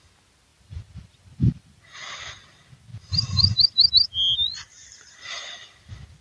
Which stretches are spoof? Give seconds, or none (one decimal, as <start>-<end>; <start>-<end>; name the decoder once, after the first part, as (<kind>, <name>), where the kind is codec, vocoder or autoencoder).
0.5-2.1 (vocoder, BigVGAN v2); 2.9-3.9